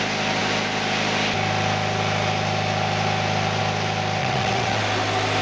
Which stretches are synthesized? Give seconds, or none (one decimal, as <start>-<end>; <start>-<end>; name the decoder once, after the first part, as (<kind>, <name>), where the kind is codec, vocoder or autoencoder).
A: 4.2-4.8 (vocoder, WaveNeXt)